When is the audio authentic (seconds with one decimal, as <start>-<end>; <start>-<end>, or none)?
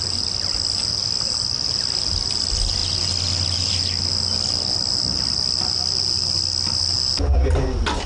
0.0-8.1